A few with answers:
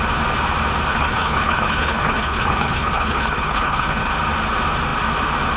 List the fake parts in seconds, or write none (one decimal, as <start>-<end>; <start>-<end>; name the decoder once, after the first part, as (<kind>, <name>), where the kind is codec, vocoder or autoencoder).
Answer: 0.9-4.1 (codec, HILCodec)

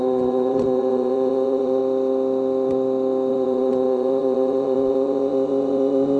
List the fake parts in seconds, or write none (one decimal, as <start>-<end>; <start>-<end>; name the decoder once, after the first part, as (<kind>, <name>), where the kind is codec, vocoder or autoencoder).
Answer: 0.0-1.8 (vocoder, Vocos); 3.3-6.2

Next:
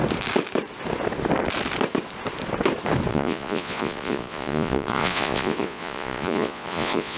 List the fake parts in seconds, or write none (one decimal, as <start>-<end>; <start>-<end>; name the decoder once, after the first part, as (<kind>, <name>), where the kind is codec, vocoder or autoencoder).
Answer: 3.1-7.2 (vocoder, Vocos)

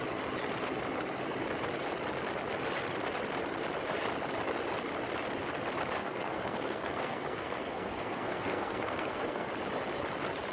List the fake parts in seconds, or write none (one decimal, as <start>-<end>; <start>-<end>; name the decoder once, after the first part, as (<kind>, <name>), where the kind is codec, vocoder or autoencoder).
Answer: 6.0-9.5 (codec, SNAC)

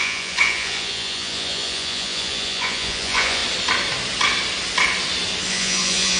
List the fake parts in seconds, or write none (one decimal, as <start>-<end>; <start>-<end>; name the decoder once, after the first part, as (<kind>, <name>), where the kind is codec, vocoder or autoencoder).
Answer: 0.0-3.4 (vocoder, Vocos); 5.5-6.2

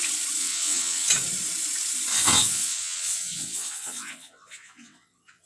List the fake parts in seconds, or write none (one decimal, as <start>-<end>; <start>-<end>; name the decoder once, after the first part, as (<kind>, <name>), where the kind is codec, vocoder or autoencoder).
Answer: 0.4-1.1 (vocoder, WaveNeXt); 2.1-5.5